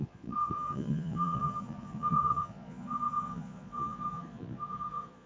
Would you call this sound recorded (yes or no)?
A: no